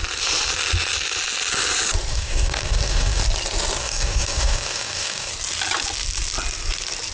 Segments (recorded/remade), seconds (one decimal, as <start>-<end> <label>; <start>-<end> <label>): 0.0-2.1 recorded; 2.1-3.2 remade; 3.2-3.8 recorded; 3.8-5.3 remade; 5.3-7.1 recorded